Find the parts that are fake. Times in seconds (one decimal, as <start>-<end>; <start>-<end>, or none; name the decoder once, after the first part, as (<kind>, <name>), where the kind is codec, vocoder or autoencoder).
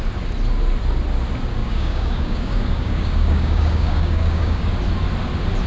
1.6-4.7 (codec, DAC)